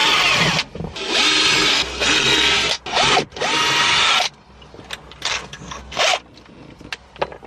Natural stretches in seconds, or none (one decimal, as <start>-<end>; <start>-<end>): 0.0-1.7; 2.8-5.3; 6.0-7.5